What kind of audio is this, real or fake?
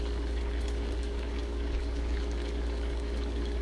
fake